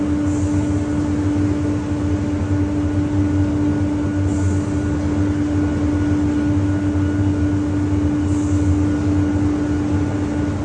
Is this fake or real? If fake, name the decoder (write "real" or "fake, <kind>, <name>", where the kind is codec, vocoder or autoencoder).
real